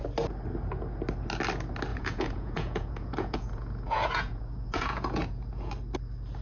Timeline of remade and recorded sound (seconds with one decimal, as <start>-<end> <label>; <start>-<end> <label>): 0.0-1.9 recorded; 1.9-5.7 remade; 5.7-6.4 recorded